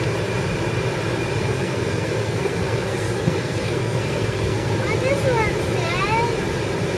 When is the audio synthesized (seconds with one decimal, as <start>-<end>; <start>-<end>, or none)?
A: 1.4-4.7